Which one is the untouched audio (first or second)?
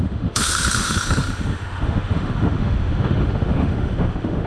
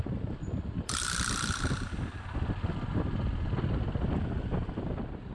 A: second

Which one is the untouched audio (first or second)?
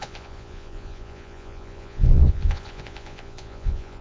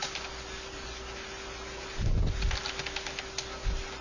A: second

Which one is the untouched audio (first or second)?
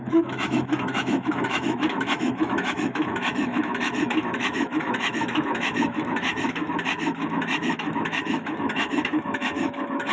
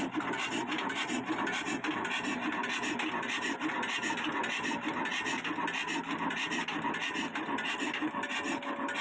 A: second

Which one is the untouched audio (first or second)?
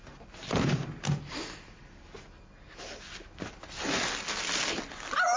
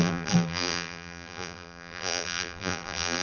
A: first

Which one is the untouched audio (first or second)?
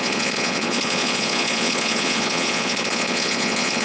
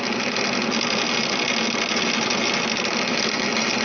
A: second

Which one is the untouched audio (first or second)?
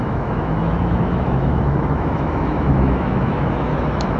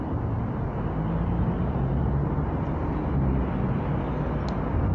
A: second